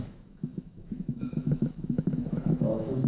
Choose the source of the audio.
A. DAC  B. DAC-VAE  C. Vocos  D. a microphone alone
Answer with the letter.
B